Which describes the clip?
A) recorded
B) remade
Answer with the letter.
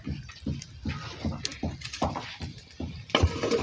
A